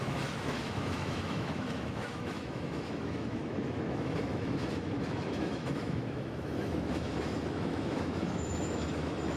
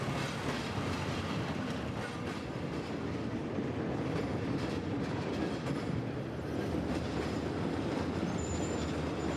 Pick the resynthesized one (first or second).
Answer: first